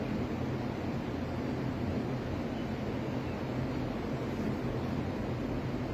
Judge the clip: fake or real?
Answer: real